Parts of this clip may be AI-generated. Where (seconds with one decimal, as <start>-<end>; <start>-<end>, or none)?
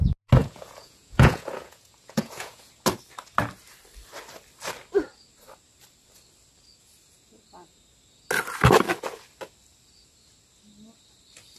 0.4-2.7